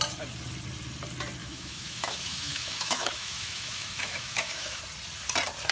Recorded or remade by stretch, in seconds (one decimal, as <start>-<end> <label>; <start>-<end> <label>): 0.0-1.4 recorded; 1.4-4.8 remade; 4.8-5.7 recorded